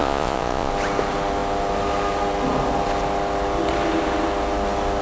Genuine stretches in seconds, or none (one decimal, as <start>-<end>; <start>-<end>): 0.7-5.0